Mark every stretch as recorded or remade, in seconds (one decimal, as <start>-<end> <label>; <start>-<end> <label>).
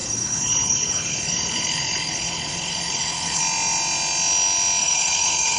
0.0-3.4 remade; 3.4-4.8 recorded; 4.8-5.6 remade